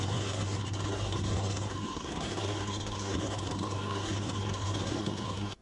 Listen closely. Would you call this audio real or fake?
fake